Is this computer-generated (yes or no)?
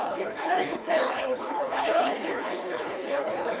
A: yes